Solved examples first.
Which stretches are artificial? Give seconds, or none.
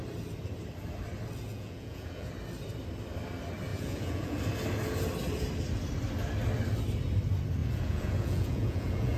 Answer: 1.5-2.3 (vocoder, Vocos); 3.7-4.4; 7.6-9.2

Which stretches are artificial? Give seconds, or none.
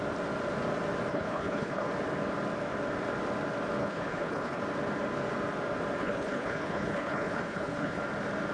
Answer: 1.1-1.9 (codec, HILCodec); 3.8-4.6; 6.0-8.0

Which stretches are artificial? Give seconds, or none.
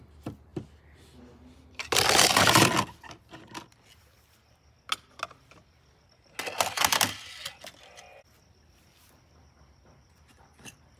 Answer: none